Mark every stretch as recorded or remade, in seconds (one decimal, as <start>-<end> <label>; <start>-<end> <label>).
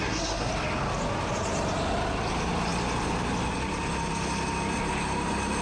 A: 0.0-0.5 remade; 0.5-5.6 recorded